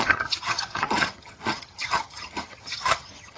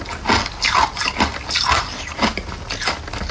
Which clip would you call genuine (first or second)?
second